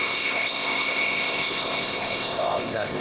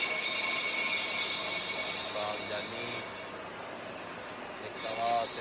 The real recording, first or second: second